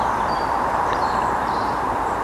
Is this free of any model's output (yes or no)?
no